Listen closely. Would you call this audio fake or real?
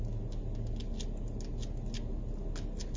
real